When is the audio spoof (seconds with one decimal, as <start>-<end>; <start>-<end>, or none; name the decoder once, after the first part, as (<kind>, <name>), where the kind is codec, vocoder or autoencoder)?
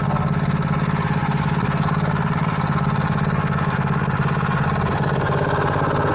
none